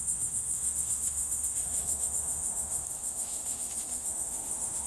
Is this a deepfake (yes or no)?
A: yes